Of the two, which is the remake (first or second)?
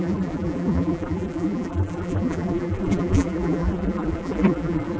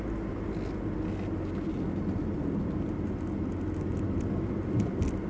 first